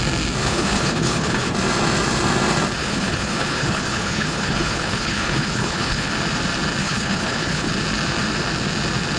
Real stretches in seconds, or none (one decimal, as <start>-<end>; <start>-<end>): 0.0-0.4; 1.5-2.8; 6.1-6.8; 7.7-9.2